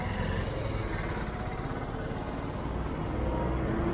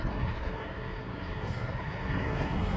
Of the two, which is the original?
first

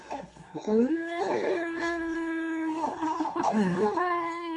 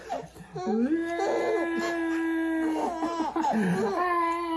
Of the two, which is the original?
second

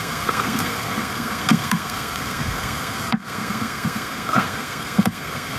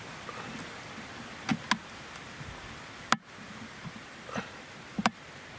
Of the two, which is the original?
second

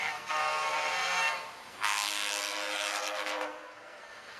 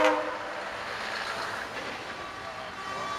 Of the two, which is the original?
second